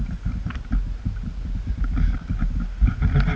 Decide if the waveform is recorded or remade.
recorded